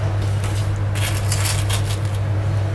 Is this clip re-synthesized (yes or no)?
no